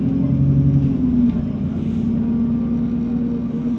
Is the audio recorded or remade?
recorded